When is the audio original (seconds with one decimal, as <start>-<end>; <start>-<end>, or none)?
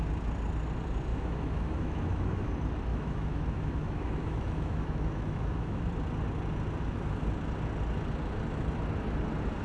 0.0-1.1; 2.5-2.9; 5.8-9.6